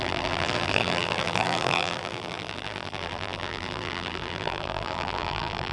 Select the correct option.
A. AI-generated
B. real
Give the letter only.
A